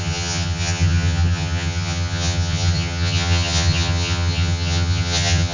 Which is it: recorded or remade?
remade